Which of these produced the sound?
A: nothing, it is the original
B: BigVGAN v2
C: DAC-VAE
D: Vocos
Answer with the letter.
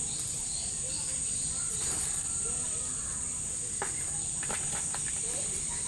B